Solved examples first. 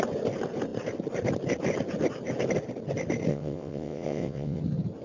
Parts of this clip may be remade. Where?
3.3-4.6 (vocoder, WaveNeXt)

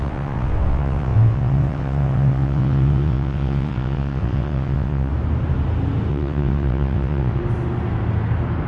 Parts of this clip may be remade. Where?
0.0-5.1 (vocoder, WaveNeXt); 6.1-7.4